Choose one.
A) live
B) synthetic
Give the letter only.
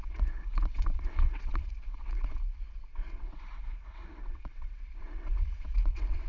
B